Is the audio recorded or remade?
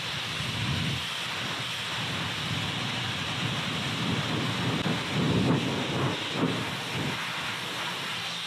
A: recorded